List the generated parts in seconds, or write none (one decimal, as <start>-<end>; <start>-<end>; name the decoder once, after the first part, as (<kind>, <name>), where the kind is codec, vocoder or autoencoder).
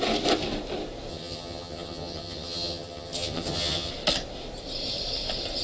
1.1-3.9 (vocoder, HiFi-GAN)